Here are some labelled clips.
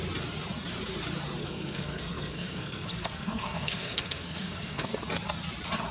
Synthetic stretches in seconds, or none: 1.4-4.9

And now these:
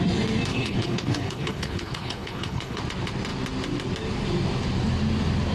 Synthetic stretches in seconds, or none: 0.5-2.8

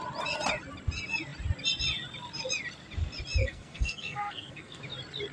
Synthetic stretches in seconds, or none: 3.4-4.8

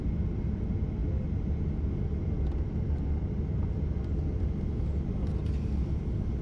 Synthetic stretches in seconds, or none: none

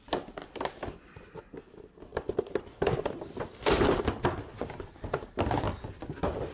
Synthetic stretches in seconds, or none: 2.1-4.0

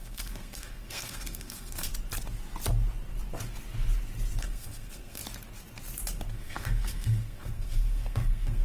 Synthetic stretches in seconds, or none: 0.0-1.9; 4.4-5.2; 6.3-8.6

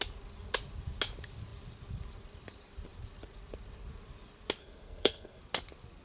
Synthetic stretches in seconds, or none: 4.6-5.4

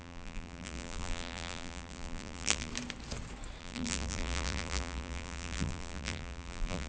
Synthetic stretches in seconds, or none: 0.0-2.7; 3.6-6.9